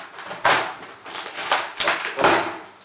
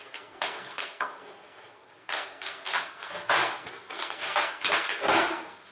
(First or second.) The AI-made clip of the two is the second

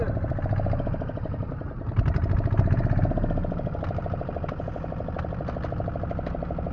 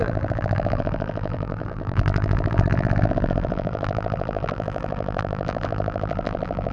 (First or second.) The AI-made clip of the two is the second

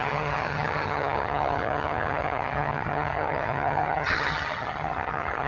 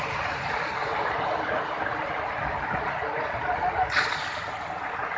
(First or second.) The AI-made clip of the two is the first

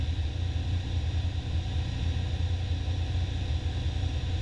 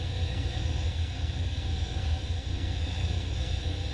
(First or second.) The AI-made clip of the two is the second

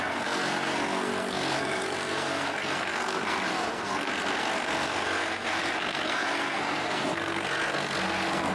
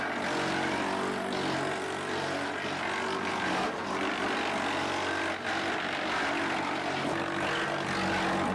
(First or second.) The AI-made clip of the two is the first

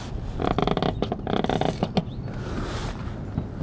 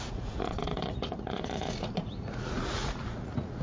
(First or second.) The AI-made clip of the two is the second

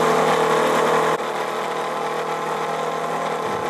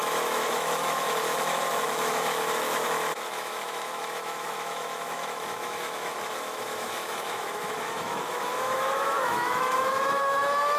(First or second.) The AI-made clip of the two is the second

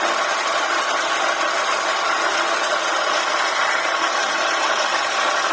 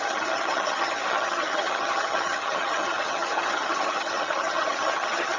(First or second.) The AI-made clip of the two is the second